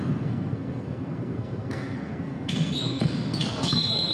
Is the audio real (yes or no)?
no